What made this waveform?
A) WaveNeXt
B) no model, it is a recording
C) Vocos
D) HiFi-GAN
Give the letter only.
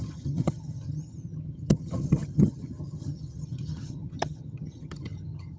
D